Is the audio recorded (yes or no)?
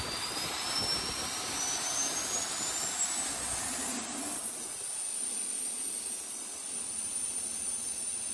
no